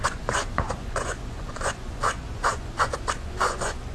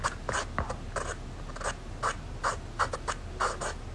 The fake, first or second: first